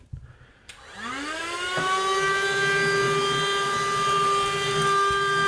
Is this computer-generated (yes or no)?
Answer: no